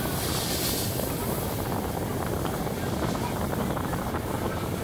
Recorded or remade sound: recorded